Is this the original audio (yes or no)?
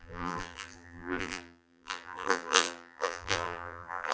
no